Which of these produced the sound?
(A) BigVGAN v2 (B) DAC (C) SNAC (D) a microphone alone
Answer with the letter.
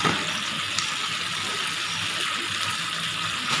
D